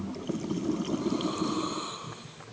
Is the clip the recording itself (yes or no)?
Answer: yes